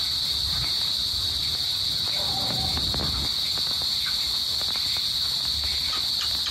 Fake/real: real